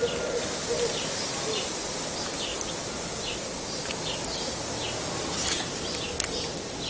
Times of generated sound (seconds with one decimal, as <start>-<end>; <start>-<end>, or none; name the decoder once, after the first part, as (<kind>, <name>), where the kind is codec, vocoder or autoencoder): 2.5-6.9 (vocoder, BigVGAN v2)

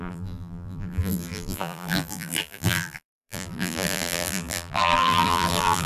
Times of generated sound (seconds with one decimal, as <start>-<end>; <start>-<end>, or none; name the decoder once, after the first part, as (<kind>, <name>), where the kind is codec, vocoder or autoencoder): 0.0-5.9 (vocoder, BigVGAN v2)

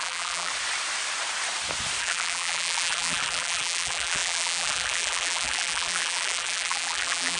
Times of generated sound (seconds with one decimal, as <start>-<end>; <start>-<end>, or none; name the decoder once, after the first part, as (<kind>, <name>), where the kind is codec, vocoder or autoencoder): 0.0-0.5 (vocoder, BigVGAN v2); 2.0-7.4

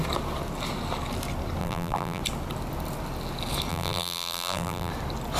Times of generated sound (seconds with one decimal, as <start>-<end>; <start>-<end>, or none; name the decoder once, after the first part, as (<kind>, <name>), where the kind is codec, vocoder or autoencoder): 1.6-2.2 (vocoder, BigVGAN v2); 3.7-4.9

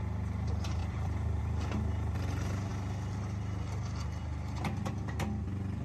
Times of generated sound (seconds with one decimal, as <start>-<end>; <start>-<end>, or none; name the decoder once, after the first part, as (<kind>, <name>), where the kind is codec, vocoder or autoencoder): 0.8-1.4 (vocoder, BigVGAN v2)

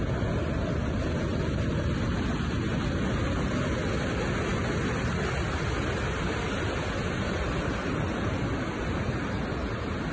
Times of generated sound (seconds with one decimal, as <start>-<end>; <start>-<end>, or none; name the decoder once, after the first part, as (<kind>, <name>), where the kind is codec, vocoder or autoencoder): none